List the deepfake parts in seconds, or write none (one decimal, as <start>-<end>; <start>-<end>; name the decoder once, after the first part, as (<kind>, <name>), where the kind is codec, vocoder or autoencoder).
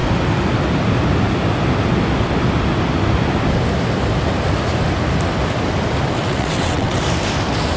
6.2-7.0 (vocoder, WaveNeXt)